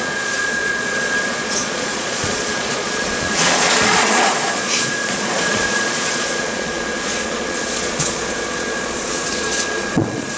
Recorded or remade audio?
remade